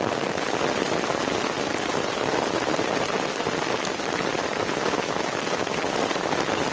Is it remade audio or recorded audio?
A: recorded